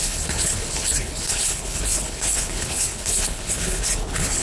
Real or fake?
fake